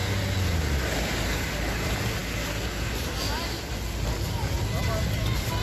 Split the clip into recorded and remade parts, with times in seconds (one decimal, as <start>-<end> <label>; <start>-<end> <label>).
0.0-5.6 recorded